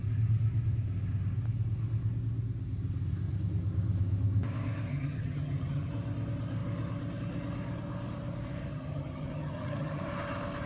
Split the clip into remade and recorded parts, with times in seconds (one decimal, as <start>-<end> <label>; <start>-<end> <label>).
0.0-4.9 recorded; 4.9-5.9 remade; 5.9-8.7 recorded; 8.7-10.0 remade; 10.0-10.7 recorded